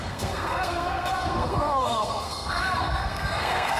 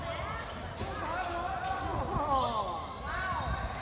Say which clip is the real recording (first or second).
second